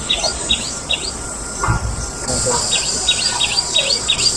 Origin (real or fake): real